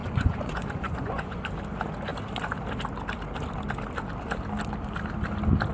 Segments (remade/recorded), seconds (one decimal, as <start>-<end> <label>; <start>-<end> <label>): 0.0-1.4 remade; 1.4-5.7 recorded